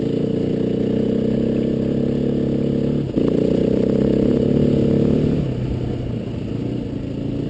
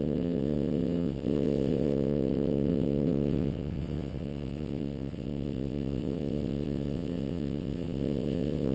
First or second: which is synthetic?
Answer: second